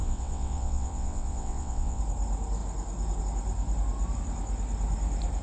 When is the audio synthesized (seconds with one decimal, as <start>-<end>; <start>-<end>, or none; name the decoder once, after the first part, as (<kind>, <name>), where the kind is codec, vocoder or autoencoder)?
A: 0.0-2.0 (vocoder, WaveNeXt)